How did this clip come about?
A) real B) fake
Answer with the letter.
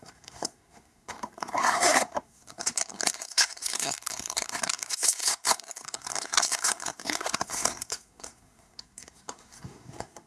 B